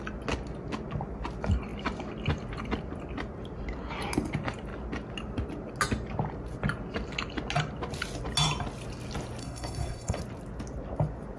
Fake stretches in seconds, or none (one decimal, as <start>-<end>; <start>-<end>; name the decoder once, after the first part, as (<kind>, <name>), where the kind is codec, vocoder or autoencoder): 9.4-10.2 (codec, SNAC)